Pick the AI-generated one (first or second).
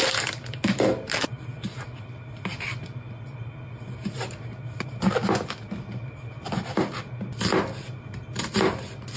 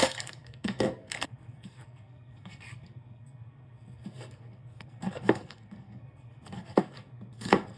second